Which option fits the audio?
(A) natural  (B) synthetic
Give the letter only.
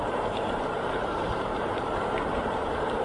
B